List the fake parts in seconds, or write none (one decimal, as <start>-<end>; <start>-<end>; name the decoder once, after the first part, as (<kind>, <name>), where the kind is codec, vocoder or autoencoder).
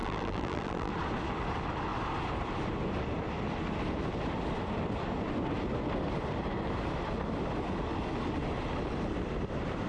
0.0-0.9 (vocoder, BigVGAN v2)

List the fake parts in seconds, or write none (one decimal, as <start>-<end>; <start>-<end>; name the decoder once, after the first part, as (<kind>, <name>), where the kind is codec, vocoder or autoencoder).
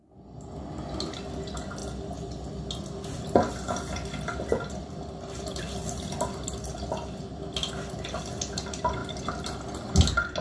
9.0-9.9 (vocoder, BigVGAN v2)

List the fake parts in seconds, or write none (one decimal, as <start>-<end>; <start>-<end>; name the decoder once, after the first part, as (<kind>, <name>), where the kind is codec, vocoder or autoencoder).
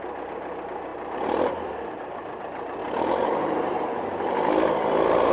0.9-2.4 (vocoder, BigVGAN v2); 2.8-4.0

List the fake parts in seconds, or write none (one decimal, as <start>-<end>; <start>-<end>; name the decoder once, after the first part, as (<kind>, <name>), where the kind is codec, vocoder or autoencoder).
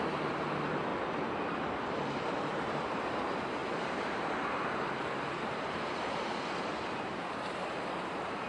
0.0-0.9 (vocoder, BigVGAN v2); 2.1-8.5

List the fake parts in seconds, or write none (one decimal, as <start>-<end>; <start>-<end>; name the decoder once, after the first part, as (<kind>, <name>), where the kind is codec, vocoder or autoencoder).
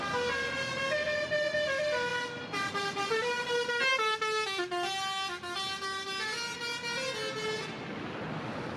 2.1-2.8 (vocoder, BigVGAN v2)